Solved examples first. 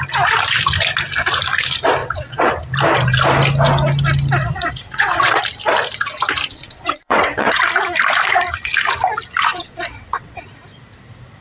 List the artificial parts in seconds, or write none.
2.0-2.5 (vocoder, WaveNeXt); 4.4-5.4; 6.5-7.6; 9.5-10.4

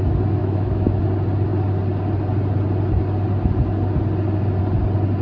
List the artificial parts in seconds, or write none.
0.4-1.0 (autoencoder, DAC-VAE)

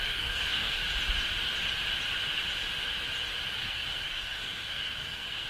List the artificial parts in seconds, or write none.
0.0-0.8 (codec, SNAC); 3.6-5.5

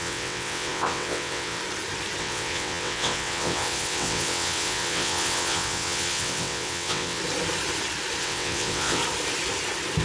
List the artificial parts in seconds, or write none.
0.0-1.6 (vocoder, WaveNeXt); 2.2-7.2; 8.2-9.0

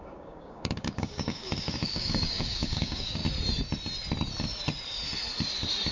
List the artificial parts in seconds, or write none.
0.0-3.2 (codec, DAC)

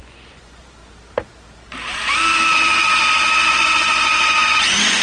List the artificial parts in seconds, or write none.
0.0-0.8 (vocoder, Vocos); 3.5-5.0

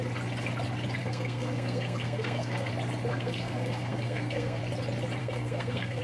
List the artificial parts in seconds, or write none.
1.0-2.7 (codec, SNAC); 3.1-4.6; 5.2-6.0

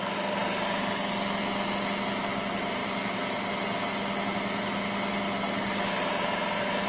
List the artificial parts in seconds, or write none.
none